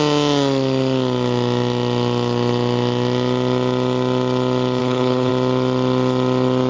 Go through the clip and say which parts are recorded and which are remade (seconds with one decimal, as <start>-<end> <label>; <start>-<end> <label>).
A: 0.0-4.8 recorded; 4.8-5.3 remade; 5.3-6.7 recorded